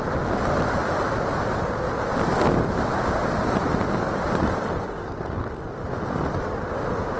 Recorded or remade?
recorded